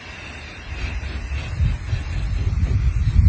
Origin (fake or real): real